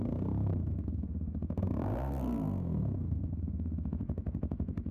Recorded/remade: remade